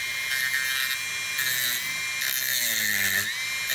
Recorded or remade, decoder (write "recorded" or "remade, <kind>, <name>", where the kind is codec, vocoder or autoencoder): recorded